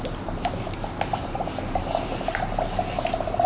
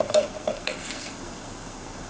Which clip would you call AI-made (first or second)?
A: second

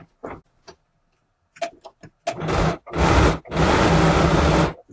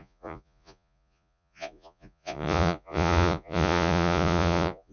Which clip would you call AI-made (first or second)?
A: second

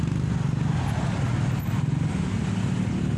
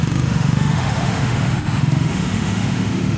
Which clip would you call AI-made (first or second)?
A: second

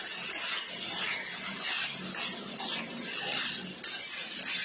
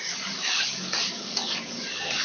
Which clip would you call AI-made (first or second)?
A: second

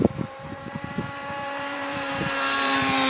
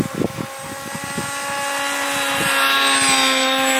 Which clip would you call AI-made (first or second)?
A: first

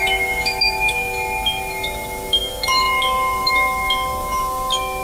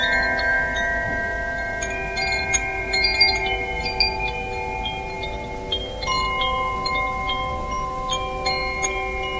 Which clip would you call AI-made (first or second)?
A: first